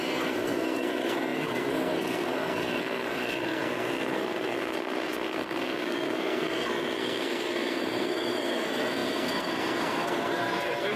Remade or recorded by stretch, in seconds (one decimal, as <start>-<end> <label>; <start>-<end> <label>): 0.0-11.0 remade